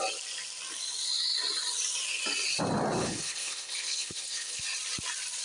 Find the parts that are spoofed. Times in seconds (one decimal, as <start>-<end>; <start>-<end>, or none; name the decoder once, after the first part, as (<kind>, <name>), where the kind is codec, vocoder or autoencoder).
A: 3.0-4.6 (codec, HILCodec)